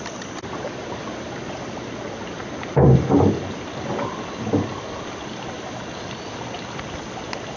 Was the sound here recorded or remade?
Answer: recorded